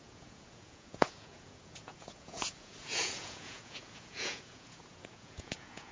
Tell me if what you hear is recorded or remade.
remade